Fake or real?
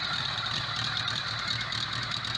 real